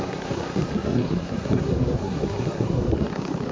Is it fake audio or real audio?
fake